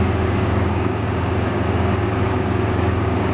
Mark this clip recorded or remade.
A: remade